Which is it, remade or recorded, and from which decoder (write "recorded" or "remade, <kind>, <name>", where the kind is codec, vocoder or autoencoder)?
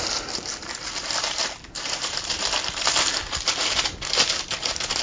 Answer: remade, vocoder, BigVGAN v2